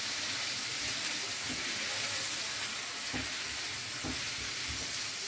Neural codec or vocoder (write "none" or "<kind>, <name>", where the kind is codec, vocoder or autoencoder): none